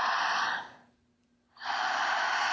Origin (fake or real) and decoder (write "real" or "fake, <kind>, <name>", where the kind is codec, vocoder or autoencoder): real